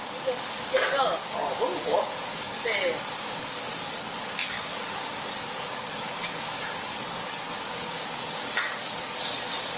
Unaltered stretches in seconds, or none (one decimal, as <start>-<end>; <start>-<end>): none